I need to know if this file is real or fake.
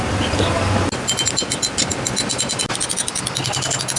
real